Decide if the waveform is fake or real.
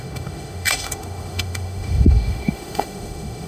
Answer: fake